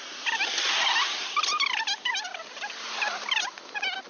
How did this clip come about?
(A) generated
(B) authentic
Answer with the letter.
B